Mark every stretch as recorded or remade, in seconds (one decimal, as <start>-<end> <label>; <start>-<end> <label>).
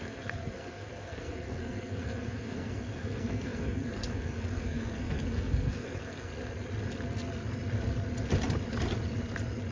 0.0-6.3 remade; 6.3-9.7 recorded